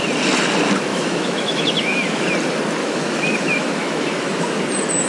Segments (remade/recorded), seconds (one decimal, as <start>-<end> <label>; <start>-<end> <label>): 0.0-0.9 recorded; 0.9-2.2 remade; 2.2-2.8 recorded; 2.8-4.6 remade; 4.6-5.1 recorded